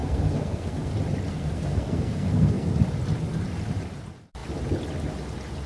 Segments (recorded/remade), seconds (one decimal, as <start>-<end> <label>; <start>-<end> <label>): 0.0-0.9 remade; 0.9-1.3 recorded; 1.3-2.8 remade; 2.8-5.7 recorded